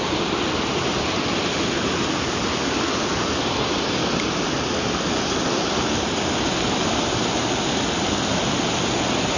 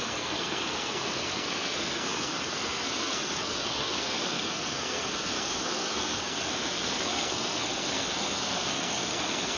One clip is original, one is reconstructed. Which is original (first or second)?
first